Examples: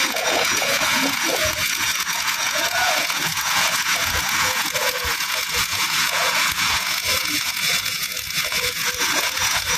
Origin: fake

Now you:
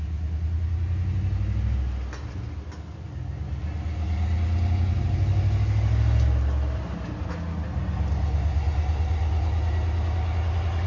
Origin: real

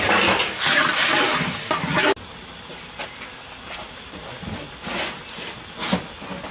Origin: real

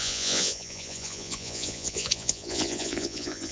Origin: fake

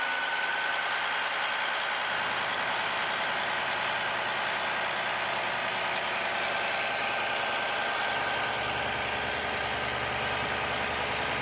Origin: real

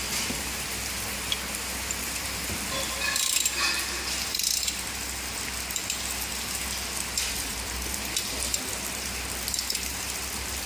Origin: real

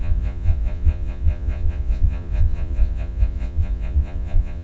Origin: fake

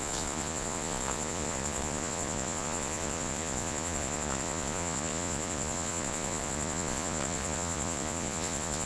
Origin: fake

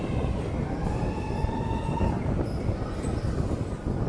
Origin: real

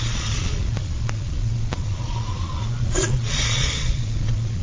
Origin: fake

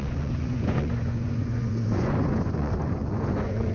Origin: fake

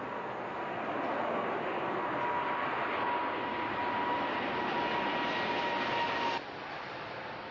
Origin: real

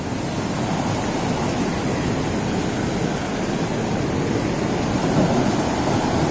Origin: real